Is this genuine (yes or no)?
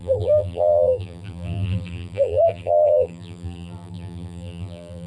no